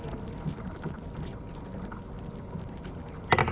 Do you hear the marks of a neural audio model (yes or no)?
no